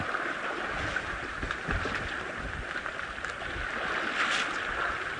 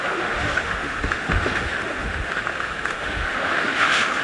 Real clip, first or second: first